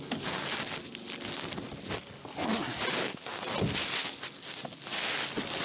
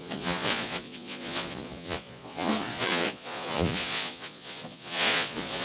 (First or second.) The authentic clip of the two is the first